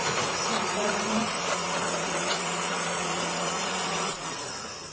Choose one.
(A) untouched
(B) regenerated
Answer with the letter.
B